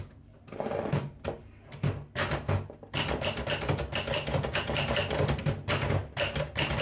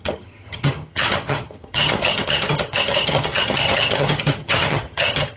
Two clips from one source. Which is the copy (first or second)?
second